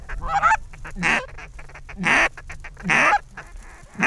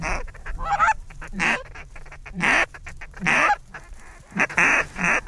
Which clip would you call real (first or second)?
first